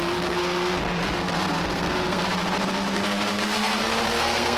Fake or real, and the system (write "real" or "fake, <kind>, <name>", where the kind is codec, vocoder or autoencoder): fake, codec, SNAC